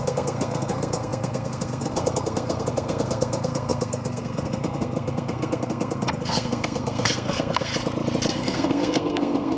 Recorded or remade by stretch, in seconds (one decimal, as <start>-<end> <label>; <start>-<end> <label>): 0.0-7.7 remade; 7.7-8.3 recorded; 8.3-9.6 remade